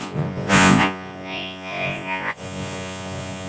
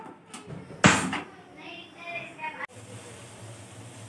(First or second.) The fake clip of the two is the first